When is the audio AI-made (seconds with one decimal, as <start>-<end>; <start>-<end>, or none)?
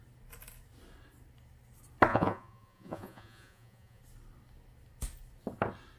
2.1-4.0